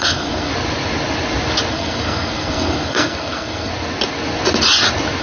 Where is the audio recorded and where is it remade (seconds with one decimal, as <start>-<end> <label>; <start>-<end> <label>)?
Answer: 0.0-0.5 remade; 0.5-1.7 recorded; 1.7-3.7 remade; 3.7-5.2 recorded